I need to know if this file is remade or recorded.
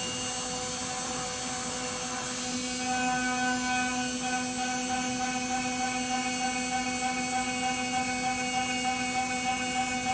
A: recorded